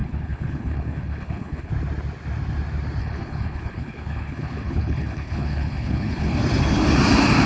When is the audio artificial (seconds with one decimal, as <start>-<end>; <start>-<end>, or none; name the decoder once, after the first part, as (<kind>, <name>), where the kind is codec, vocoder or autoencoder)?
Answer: 0.0-1.7 (codec, HILCodec); 3.0-6.4